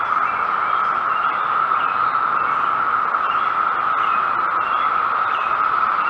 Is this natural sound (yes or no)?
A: yes